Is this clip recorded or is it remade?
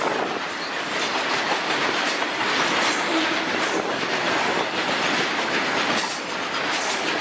remade